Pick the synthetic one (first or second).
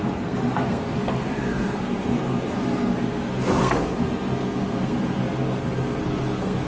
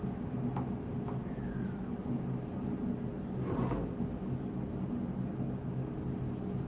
first